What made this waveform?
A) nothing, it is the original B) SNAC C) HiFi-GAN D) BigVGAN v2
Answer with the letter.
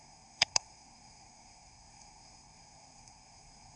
B